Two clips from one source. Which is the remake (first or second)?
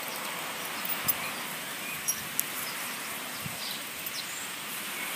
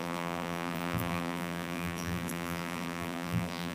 second